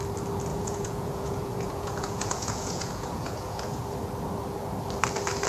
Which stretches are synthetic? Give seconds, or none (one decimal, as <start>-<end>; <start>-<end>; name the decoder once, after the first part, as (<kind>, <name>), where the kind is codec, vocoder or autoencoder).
0.5-3.8 (vocoder, Vocos)